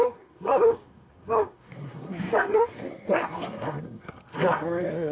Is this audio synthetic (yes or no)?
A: yes